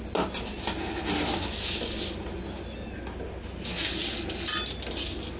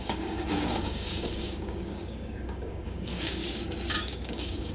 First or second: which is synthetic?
second